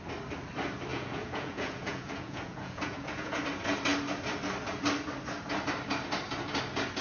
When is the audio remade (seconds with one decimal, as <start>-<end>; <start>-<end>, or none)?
0.9-3.4